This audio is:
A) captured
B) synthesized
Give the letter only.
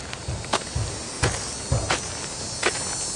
A